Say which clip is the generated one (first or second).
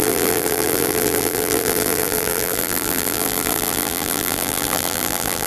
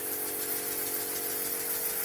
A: first